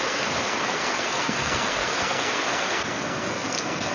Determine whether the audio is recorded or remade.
remade